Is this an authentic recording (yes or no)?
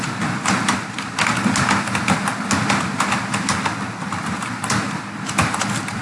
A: yes